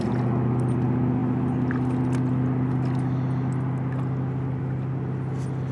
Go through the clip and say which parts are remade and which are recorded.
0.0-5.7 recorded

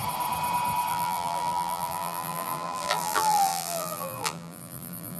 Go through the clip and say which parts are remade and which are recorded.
0.0-0.9 recorded; 0.9-5.2 remade